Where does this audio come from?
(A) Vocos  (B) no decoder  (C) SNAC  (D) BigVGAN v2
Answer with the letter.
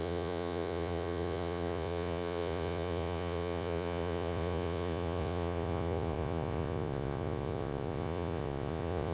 A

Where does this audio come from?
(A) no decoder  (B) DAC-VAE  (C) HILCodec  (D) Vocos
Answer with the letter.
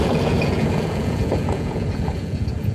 D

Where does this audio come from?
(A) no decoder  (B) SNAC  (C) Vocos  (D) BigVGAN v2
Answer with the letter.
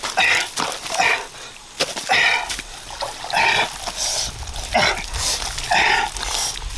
A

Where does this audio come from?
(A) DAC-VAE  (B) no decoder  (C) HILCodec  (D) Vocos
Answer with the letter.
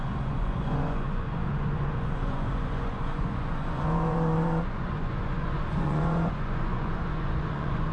D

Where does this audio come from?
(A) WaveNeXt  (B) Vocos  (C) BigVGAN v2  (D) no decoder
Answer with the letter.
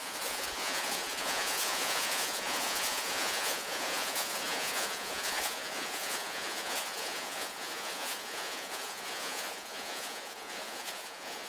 B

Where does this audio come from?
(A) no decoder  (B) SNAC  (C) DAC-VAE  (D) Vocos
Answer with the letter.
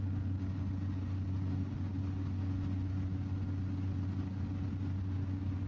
A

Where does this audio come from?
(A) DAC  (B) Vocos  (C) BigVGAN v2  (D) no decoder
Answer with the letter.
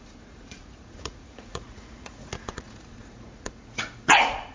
B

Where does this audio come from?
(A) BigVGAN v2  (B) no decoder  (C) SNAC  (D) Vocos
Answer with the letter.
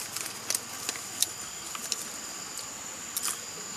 B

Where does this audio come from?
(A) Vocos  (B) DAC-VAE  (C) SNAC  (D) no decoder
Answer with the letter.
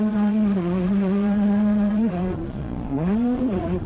A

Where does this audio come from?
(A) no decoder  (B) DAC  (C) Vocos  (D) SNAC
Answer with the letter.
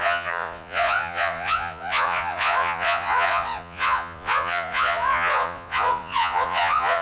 C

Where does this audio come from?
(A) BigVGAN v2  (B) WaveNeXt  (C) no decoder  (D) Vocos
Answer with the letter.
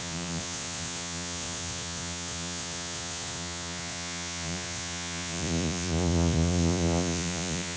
D